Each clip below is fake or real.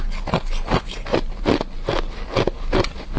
real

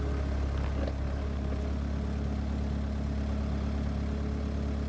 real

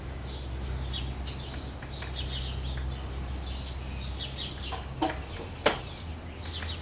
real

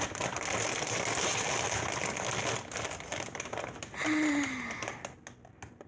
real